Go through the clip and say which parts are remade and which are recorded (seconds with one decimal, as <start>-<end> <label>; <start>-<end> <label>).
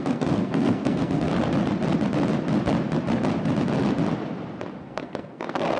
0.0-1.3 remade; 1.3-4.8 recorded; 4.8-5.8 remade